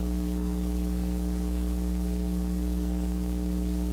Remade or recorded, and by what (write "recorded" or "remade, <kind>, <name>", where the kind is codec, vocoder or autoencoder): remade, codec, SNAC